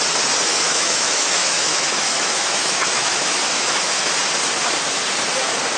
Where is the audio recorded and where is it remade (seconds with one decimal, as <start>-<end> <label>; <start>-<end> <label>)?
0.0-0.5 recorded; 0.5-4.0 remade; 4.0-5.8 recorded